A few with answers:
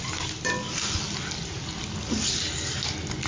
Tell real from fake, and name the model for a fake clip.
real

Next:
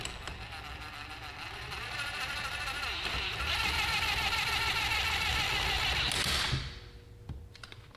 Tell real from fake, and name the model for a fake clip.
real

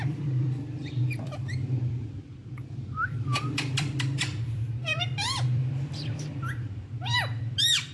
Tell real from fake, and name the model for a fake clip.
fake, vocoder, BigVGAN v2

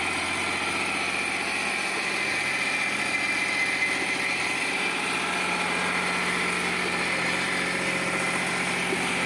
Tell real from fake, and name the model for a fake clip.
real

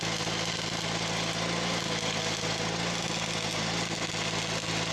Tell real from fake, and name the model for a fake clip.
real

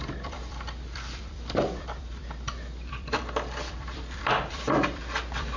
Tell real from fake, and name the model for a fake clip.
fake, vocoder, BigVGAN v2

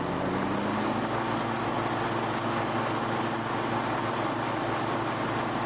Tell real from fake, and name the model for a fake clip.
real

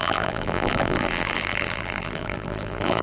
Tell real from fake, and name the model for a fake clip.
fake, vocoder, BigVGAN v2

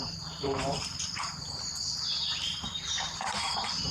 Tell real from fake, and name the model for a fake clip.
fake, vocoder, BigVGAN v2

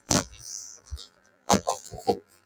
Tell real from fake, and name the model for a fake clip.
fake, vocoder, BigVGAN v2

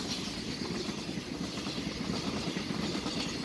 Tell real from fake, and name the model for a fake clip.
real